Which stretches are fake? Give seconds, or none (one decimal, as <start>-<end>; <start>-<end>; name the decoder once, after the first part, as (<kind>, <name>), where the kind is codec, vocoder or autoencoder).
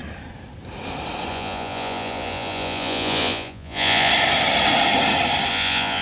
1.3-4.1 (vocoder, Vocos); 5.5-6.0